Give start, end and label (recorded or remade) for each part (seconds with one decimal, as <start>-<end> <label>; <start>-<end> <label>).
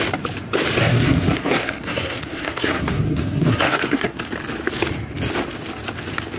0.0-0.8 recorded; 0.8-4.2 remade; 4.2-6.4 recorded